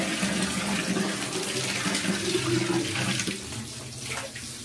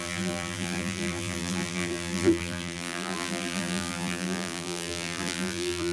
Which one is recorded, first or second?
first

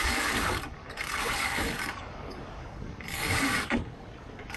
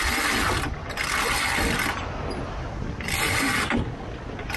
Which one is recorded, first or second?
second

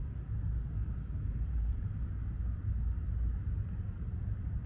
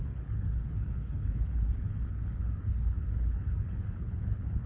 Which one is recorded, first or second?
first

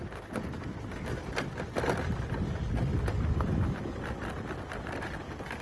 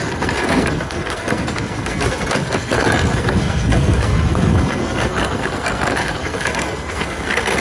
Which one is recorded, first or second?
first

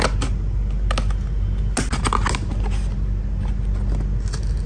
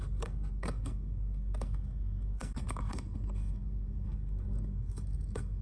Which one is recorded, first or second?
first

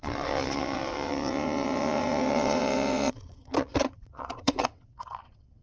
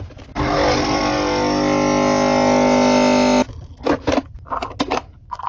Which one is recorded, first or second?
second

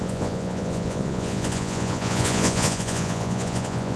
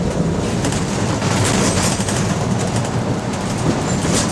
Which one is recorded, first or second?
second